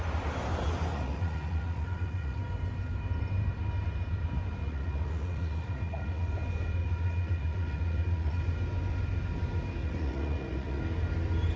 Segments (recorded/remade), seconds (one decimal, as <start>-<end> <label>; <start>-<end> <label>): 0.0-0.9 recorded; 0.9-2.4 remade; 2.4-4.6 recorded; 4.6-6.3 remade; 6.3-6.8 recorded; 6.8-8.4 remade; 8.4-9.8 recorded; 9.8-10.8 remade; 10.8-11.6 recorded